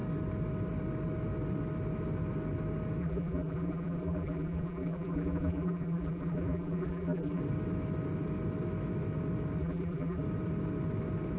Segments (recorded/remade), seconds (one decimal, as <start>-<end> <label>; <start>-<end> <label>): 0.0-3.0 recorded; 3.0-7.4 remade; 7.4-9.6 recorded; 9.6-10.2 remade; 10.2-11.4 recorded